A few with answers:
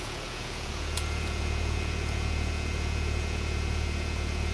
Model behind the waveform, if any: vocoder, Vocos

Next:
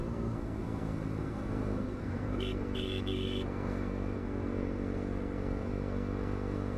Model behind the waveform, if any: codec, SNAC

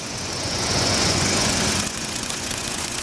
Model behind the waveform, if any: vocoder, Vocos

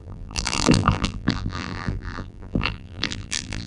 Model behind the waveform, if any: vocoder, BigVGAN v2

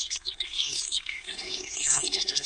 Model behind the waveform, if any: codec, SNAC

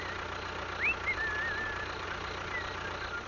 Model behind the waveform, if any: none